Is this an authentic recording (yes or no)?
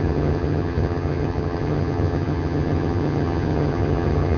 no